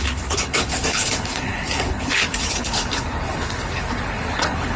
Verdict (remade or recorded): remade